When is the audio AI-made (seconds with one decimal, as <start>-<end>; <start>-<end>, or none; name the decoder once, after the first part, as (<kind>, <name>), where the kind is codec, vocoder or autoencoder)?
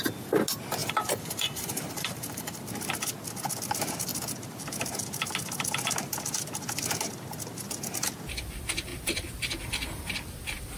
0.8-2.6 (vocoder, BigVGAN v2)